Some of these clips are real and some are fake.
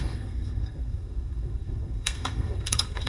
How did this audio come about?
fake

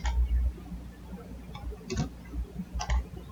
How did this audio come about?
real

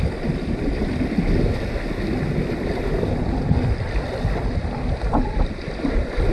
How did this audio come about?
real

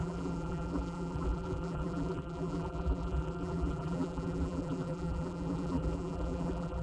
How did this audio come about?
fake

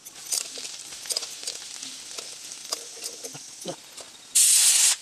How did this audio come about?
real